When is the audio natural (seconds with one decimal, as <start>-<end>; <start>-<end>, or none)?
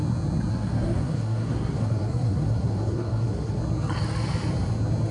0.0-0.5; 3.6-5.1